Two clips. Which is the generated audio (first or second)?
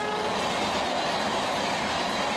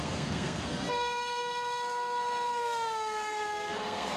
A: second